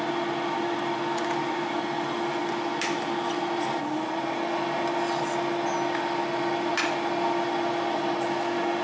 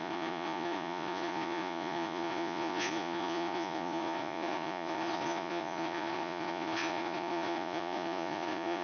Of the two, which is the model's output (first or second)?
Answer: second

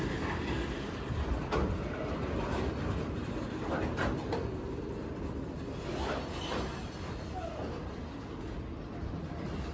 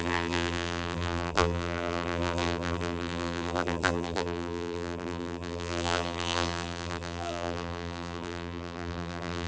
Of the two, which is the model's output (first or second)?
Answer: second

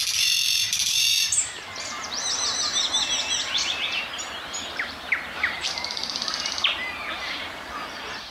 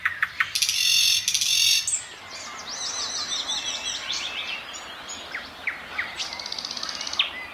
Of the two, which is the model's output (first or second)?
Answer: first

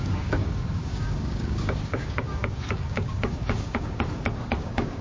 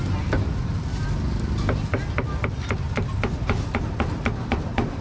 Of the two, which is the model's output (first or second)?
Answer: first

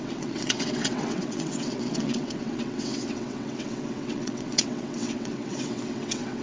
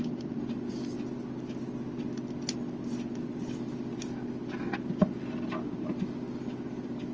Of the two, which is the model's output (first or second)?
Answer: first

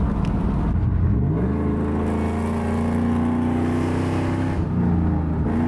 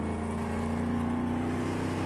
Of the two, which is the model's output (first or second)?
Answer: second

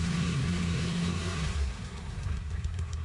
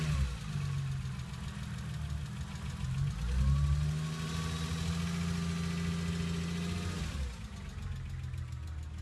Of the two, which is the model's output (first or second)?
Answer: first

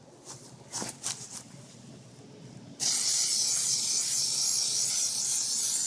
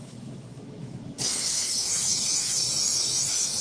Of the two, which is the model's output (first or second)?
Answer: second